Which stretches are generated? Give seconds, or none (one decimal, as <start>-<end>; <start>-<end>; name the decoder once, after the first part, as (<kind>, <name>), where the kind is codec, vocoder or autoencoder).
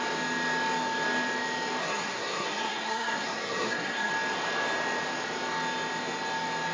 1.8-4.1 (codec, SNAC)